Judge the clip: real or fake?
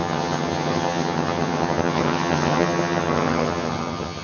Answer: fake